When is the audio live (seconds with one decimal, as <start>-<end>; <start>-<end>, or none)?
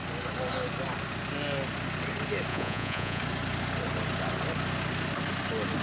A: 0.0-2.5; 3.2-5.8